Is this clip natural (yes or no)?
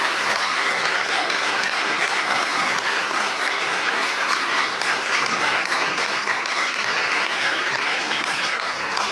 no